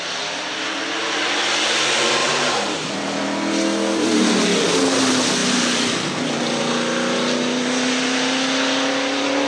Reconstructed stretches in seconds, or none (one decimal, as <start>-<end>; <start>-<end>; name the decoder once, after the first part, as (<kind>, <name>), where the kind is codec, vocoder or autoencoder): 2.2-2.9 (vocoder, BigVGAN v2)